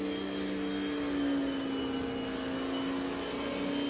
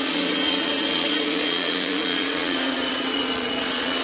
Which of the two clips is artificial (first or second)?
second